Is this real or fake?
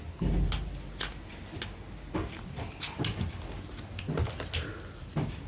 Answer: real